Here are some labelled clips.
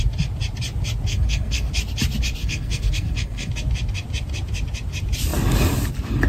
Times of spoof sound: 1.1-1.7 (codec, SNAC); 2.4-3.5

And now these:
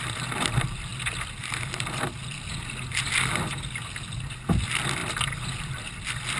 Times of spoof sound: none